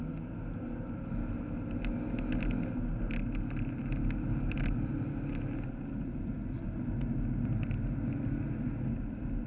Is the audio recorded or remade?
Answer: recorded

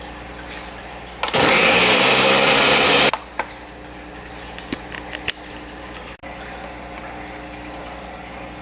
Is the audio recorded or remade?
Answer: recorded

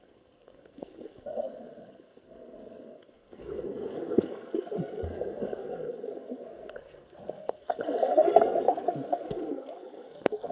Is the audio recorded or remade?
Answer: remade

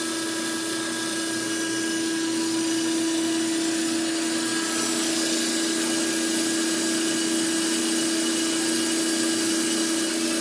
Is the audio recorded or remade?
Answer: recorded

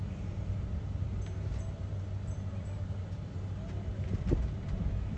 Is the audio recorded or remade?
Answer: recorded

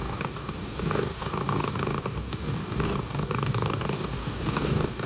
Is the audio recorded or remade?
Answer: remade